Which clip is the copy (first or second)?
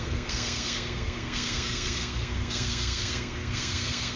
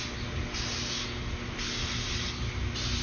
first